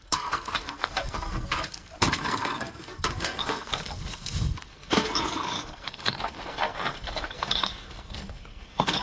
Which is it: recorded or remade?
remade